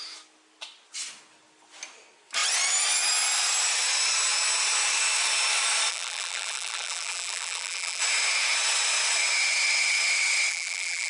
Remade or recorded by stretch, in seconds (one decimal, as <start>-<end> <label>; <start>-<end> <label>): 0.0-5.9 recorded; 5.9-8.0 remade; 8.0-10.5 recorded; 10.5-11.1 remade